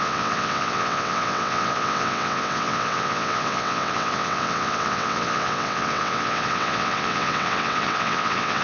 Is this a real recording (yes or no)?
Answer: no